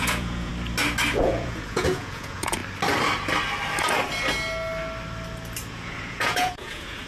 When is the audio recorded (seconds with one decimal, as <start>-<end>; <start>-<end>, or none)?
0.5-1.1; 2.6-5.7